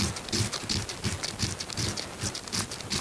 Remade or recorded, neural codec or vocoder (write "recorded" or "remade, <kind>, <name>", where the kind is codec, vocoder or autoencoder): recorded